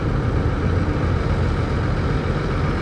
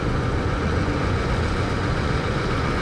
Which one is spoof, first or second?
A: second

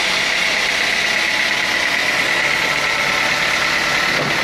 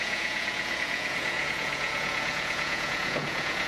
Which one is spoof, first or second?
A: second